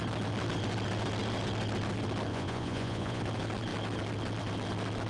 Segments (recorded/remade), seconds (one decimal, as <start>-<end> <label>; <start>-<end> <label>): 0.0-2.3 recorded; 2.3-3.2 remade; 3.2-5.1 recorded